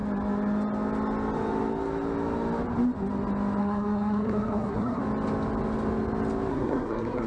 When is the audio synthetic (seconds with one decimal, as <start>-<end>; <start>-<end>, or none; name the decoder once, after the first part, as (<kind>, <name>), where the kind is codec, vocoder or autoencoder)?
3.6-5.0 (codec, SNAC); 6.5-7.3